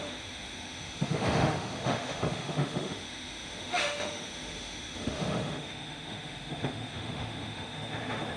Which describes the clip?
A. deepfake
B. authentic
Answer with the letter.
A